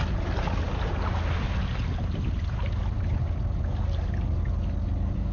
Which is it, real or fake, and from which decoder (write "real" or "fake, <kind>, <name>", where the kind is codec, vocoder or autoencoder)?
real